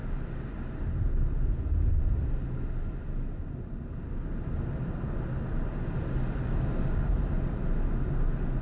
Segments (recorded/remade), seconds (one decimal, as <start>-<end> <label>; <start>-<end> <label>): 0.0-8.6 recorded